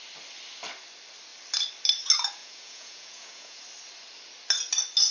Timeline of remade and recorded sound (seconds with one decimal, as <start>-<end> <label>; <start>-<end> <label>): 0.0-2.4 recorded; 2.4-3.6 remade; 3.6-5.1 recorded

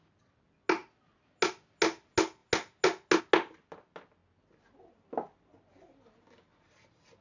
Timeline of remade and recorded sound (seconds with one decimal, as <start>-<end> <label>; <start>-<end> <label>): 0.0-7.2 recorded